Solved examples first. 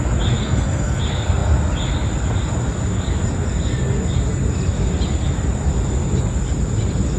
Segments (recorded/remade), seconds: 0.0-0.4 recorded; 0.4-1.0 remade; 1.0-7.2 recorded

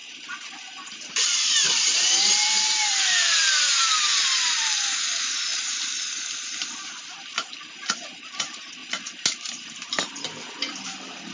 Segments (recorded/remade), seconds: 0.0-8.8 remade; 8.8-9.3 recorded; 9.3-11.3 remade

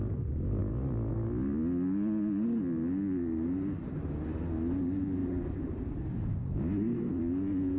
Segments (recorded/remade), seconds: 0.0-5.2 recorded; 5.2-7.2 remade; 7.2-7.8 recorded

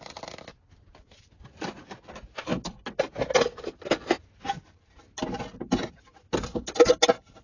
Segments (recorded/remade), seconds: 0.0-7.4 recorded